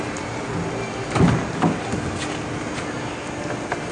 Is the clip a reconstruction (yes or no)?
no